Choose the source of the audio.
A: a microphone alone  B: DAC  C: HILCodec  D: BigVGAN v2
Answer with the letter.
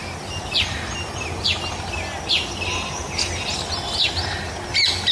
A